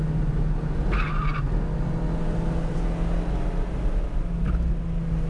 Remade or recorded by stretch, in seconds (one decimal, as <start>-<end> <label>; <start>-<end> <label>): 0.0-5.3 recorded